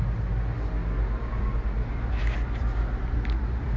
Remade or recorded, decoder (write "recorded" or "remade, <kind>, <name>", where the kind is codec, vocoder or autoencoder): recorded